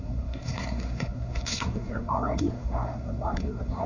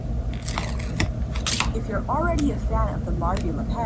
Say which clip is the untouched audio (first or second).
second